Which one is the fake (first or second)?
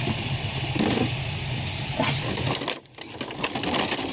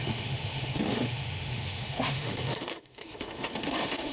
second